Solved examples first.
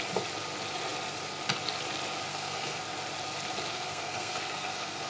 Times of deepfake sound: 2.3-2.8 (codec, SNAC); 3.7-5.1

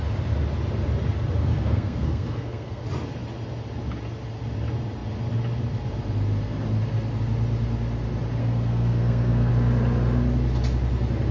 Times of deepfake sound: 1.4-2.8 (codec, SNAC); 8.4-9.5

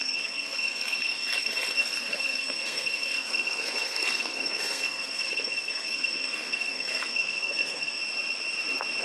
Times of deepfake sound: 0.0-8.0 (codec, SNAC)

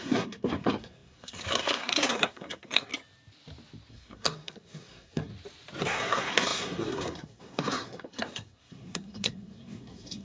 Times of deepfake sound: 0.0-2.9 (codec, SNAC); 3.9-5.3; 5.8-10.2

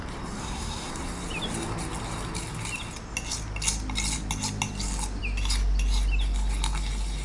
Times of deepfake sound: 0.4-0.9 (codec, SNAC)

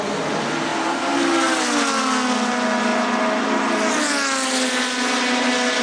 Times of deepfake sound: none